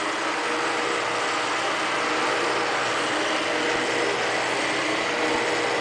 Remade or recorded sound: recorded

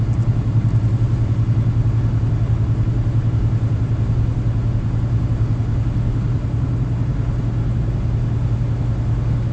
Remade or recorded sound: recorded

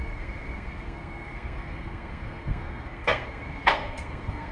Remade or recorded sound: remade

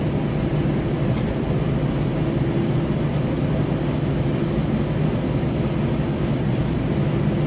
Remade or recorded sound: recorded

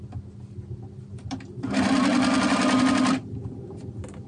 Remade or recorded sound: recorded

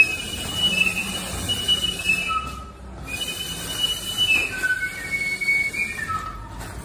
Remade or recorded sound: recorded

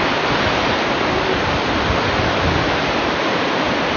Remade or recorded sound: recorded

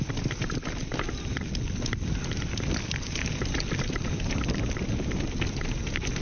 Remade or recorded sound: recorded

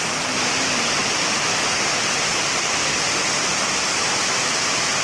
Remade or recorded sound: recorded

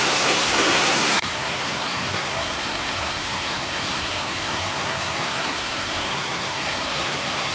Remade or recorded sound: remade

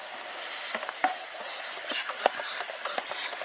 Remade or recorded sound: recorded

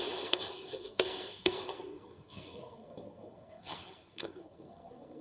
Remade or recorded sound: remade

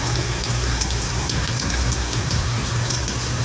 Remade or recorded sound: remade